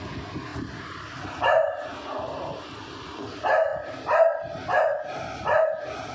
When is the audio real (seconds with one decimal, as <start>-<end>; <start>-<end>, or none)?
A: 0.0-6.1